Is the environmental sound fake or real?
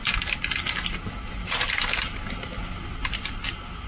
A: real